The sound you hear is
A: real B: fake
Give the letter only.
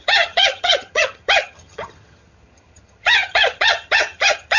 B